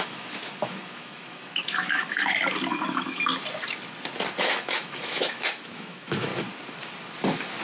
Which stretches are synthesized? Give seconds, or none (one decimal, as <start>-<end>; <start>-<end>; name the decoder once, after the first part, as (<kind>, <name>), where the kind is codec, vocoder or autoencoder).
0.0-2.2 (autoencoder, DAC-VAE); 2.7-3.3; 4.4-6.3